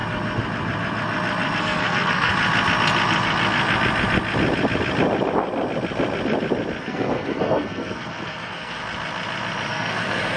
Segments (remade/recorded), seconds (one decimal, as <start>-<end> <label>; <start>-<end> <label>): 0.0-1.6 recorded; 1.6-2.3 remade; 2.3-6.8 recorded; 6.8-8.8 remade; 8.8-9.7 recorded; 9.7-10.4 remade